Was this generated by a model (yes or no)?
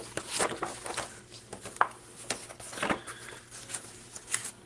no